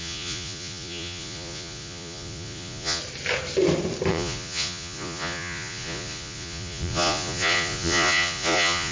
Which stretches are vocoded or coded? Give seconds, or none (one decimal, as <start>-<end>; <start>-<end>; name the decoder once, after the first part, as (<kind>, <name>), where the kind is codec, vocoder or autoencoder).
0.0-3.0 (vocoder, Vocos); 4.1-8.9